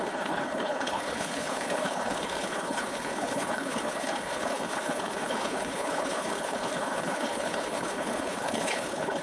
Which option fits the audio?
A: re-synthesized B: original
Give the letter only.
A